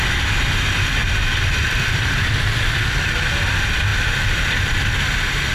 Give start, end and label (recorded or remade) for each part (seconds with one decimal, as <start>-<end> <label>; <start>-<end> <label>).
0.0-1.0 recorded; 1.0-2.2 remade; 2.2-3.9 recorded; 3.9-5.0 remade; 5.0-5.5 recorded